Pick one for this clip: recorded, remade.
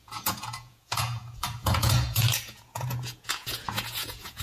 remade